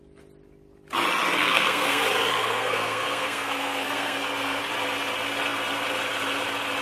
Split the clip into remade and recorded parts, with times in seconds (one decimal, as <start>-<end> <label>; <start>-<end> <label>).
0.0-1.4 recorded; 1.4-2.0 remade; 2.0-2.4 recorded; 2.4-4.6 remade; 4.6-6.8 recorded